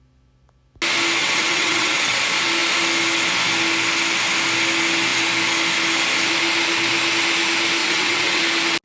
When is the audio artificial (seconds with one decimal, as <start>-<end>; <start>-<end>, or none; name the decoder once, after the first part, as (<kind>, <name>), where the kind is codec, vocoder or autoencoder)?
1.2-2.2 (vocoder, WaveNeXt); 7.8-8.4